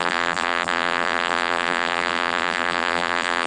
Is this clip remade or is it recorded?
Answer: remade